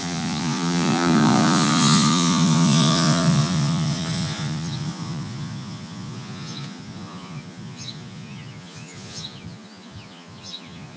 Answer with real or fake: fake